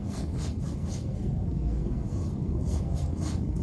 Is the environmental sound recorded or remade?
remade